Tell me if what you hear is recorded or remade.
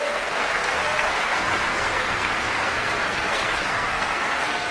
remade